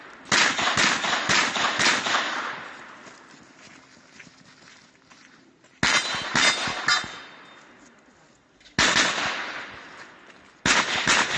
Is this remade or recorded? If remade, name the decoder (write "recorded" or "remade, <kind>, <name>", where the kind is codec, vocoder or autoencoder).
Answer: recorded